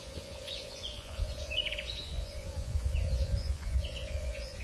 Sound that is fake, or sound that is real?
fake